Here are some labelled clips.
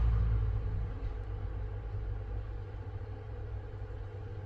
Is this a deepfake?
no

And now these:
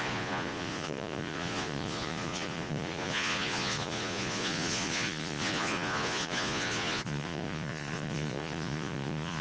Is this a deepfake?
yes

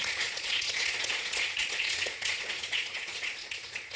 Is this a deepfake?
yes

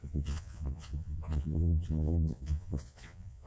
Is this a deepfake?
yes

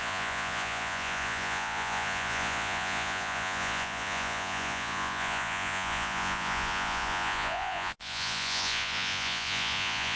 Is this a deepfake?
yes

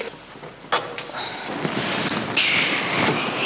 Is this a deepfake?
no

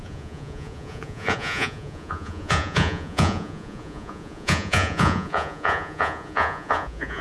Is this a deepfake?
yes